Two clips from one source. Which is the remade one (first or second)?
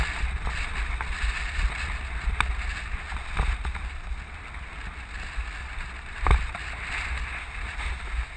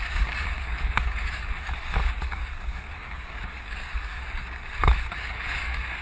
second